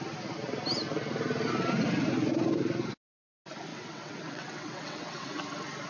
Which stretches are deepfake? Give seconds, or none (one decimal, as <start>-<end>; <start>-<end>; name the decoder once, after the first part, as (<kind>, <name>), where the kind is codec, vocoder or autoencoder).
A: 3.7-5.3 (vocoder, WaveNeXt)